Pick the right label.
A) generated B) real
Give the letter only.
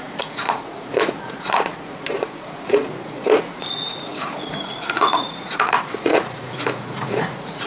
A